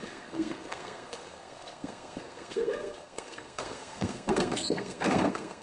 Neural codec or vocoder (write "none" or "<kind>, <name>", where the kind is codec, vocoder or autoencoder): codec, SNAC